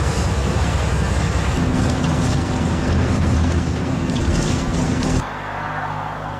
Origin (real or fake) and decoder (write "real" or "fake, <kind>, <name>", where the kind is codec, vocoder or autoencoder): fake, codec, SNAC